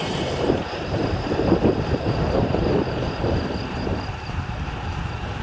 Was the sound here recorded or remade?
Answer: remade